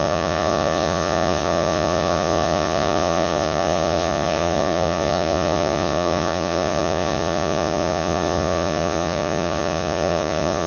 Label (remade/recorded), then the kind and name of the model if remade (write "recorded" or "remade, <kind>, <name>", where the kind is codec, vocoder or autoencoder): remade, vocoder, Vocos